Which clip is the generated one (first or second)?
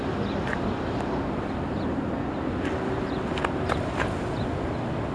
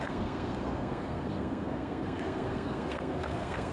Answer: second